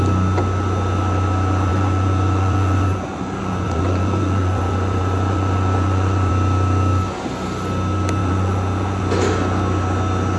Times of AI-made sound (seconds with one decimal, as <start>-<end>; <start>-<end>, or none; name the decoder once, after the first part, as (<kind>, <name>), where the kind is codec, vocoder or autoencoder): 1.7-6.3 (vocoder, Vocos); 8.2-9.0